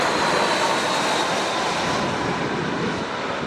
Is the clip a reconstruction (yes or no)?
no